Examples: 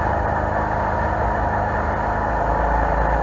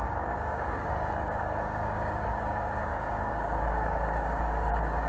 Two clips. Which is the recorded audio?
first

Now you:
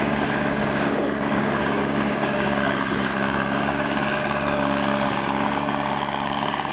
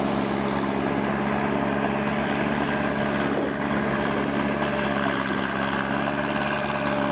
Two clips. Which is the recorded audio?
second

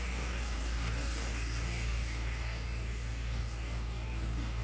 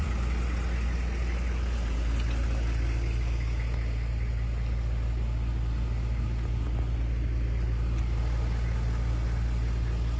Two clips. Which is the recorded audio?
second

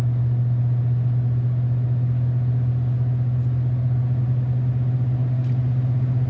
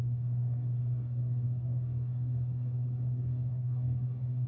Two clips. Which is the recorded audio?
first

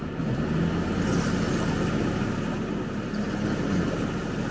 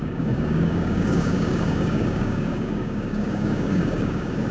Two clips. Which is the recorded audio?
first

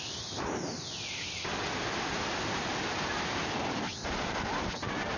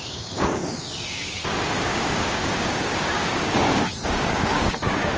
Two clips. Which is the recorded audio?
first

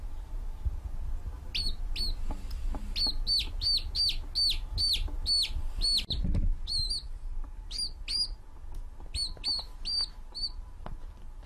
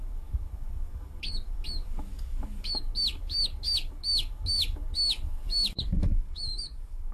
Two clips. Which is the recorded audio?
first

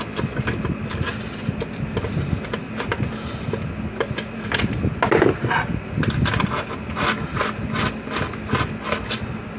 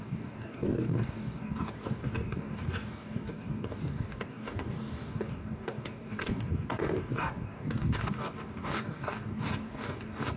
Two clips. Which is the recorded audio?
first